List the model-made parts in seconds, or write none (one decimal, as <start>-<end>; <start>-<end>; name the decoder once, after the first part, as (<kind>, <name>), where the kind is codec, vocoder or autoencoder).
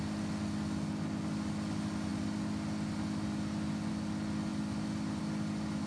none